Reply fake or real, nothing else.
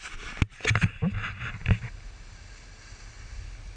real